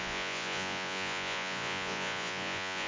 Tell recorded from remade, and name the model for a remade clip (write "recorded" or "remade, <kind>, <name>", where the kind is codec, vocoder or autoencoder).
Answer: remade, vocoder, Vocos